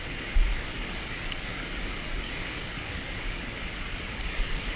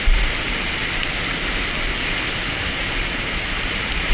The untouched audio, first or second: second